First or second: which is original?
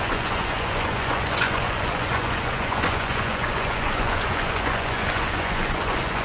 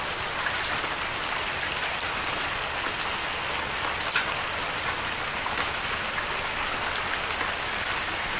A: second